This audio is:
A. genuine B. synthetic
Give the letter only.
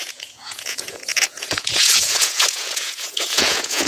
B